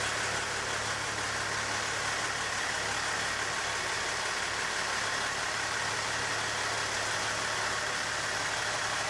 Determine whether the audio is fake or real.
real